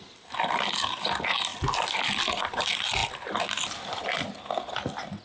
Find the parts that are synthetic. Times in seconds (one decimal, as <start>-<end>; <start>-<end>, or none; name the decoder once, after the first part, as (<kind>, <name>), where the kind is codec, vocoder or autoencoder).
none